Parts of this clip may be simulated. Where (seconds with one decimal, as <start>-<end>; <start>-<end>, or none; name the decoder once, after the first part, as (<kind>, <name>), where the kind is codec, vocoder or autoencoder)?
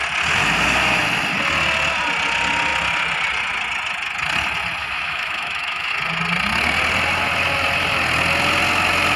4.8-5.9 (autoencoder, DAC-VAE)